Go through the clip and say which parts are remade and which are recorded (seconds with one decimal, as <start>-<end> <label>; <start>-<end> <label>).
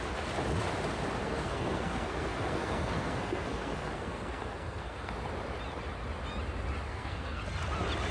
0.0-1.2 recorded; 1.2-5.1 remade; 5.1-6.9 recorded; 6.9-7.4 remade; 7.4-8.1 recorded